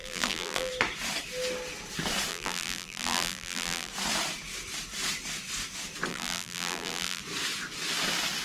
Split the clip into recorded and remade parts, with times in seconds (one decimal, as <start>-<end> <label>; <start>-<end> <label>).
0.0-0.7 remade; 0.7-2.3 recorded; 2.3-3.9 remade; 3.9-6.1 recorded; 6.1-7.2 remade; 7.2-8.4 recorded